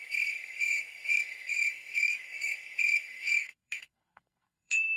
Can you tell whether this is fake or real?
fake